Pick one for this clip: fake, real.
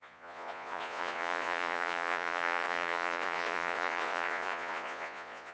fake